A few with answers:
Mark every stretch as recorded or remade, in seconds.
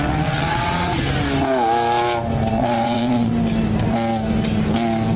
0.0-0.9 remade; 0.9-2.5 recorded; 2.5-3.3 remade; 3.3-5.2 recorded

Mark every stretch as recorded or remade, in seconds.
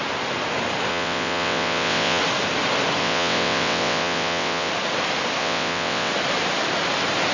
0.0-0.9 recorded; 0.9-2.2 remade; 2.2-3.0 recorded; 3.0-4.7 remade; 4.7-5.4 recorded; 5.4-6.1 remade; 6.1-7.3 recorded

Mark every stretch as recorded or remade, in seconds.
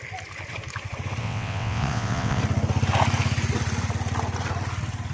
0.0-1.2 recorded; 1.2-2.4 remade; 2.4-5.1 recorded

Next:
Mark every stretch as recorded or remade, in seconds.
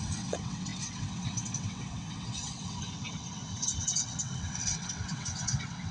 0.0-5.9 remade